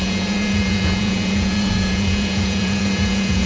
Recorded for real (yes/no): no